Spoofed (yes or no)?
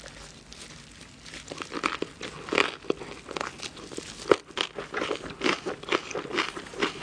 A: no